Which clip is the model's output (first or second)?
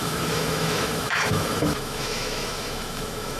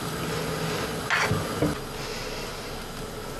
first